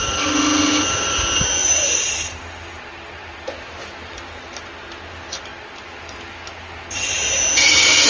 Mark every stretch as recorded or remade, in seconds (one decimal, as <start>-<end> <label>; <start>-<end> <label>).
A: 0.0-1.6 recorded; 1.6-2.4 remade; 2.4-8.1 recorded